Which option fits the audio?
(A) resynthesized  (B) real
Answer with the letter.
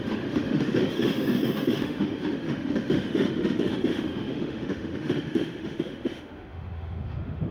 A